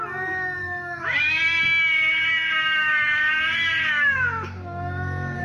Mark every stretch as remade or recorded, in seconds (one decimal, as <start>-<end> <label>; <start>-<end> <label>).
0.0-0.6 recorded; 0.6-1.4 remade; 1.4-2.1 recorded; 2.1-5.4 remade